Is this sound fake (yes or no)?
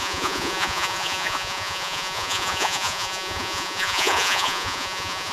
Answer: yes